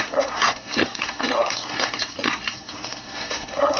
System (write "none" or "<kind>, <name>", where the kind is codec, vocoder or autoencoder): codec, SNAC